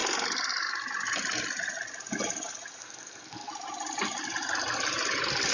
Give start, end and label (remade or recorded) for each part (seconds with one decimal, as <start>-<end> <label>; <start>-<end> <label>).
0.0-2.8 recorded; 2.8-3.5 remade; 3.5-5.5 recorded